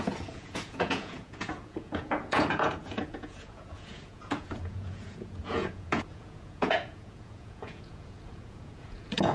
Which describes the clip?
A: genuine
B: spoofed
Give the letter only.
B